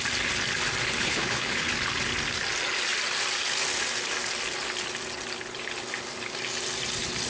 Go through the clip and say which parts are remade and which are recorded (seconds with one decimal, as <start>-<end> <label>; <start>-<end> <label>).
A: 0.0-1.0 recorded; 1.0-1.7 remade; 1.7-7.3 recorded